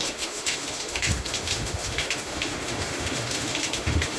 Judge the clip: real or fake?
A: fake